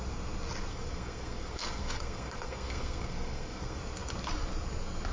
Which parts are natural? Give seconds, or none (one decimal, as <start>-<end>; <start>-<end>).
0.0-0.7; 3.8-5.1